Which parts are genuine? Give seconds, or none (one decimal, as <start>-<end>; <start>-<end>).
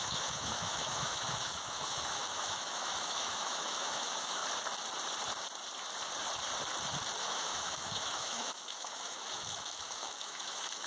4.4-7.2